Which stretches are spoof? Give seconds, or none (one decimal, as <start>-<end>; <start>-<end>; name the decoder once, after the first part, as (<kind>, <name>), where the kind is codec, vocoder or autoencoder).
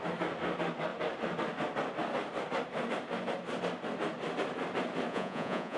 5.1-5.8 (vocoder, Vocos)